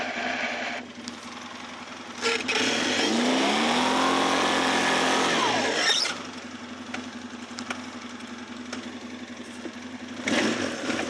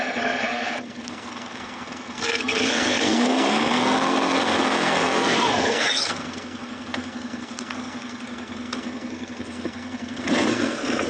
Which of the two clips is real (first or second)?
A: first